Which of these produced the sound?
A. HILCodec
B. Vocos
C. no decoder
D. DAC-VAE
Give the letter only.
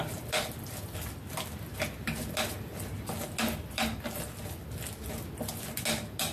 C